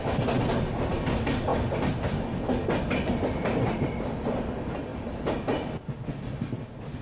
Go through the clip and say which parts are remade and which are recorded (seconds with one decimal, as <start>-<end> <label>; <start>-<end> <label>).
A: 0.0-7.0 recorded